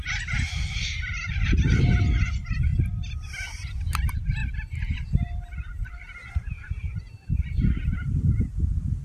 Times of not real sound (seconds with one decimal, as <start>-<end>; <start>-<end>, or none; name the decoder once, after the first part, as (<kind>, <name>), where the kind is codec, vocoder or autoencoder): 0.0-2.7 (vocoder, BigVGAN v2); 3.8-4.4; 4.9-9.0